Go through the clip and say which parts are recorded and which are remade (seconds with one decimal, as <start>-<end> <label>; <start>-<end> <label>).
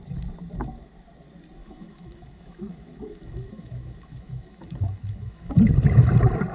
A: 0.0-1.6 recorded; 1.6-5.5 remade; 5.5-6.5 recorded